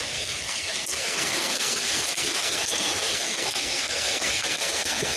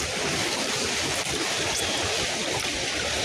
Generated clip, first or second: first